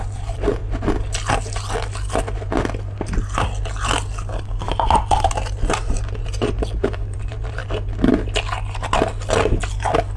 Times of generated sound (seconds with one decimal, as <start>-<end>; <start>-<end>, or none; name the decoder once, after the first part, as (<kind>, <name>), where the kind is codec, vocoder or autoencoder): 0.0-0.6 (vocoder, BigVGAN v2); 5.5-7.6